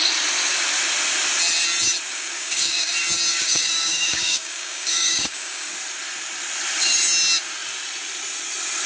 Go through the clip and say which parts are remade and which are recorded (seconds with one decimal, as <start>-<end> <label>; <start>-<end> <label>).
0.0-2.1 recorded; 2.1-2.9 remade; 2.9-3.3 recorded; 3.3-5.7 remade; 5.7-8.9 recorded